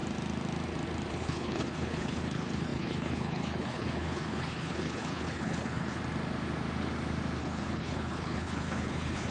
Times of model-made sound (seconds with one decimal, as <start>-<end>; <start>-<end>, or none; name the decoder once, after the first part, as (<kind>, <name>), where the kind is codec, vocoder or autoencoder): 1.1-6.0 (codec, HILCodec); 7.4-9.3